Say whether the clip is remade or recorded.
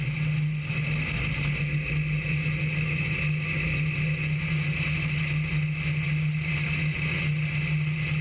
recorded